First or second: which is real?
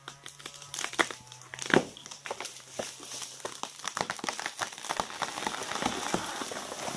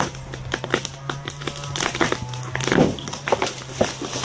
first